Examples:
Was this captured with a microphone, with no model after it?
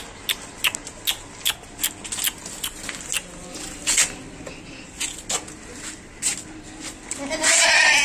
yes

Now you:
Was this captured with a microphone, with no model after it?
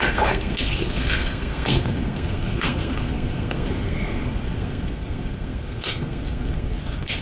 no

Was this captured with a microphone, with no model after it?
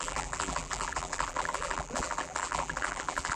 no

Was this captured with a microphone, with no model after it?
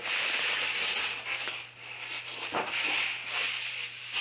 yes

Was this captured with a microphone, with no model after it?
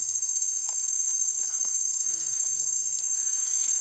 no